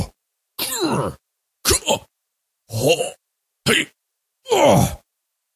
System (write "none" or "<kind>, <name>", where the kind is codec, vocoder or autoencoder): none